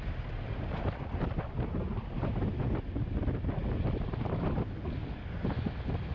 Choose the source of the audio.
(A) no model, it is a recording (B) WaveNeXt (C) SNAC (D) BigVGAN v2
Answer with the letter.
A